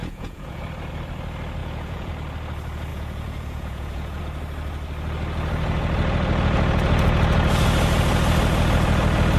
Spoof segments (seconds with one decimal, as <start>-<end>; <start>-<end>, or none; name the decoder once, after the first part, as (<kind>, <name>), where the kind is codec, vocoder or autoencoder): 0.0-0.6 (vocoder, Vocos); 1.6-2.1; 2.9-4.2